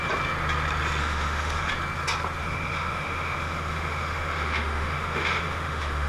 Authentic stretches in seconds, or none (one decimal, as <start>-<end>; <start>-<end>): 0.0-1.0; 1.7-2.4